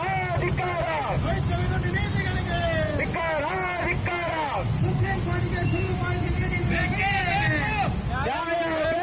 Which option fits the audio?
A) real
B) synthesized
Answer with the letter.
A